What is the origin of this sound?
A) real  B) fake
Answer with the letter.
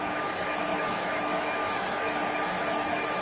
B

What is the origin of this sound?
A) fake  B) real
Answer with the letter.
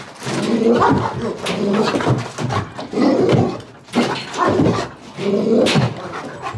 B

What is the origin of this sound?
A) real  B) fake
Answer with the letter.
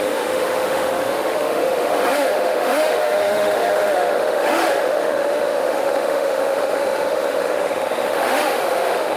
B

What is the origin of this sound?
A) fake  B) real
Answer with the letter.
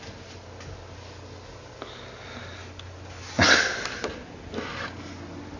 B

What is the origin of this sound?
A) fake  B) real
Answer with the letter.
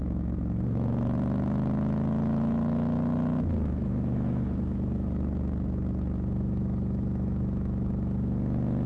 A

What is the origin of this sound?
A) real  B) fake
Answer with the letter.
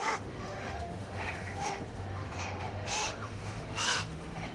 B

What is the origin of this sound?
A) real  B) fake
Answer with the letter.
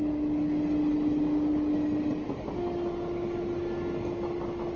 A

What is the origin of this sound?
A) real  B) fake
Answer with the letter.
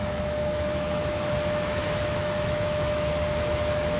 B